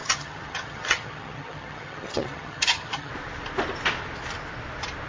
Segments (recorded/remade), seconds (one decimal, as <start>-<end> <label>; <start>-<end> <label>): 0.0-3.1 remade; 3.1-5.1 recorded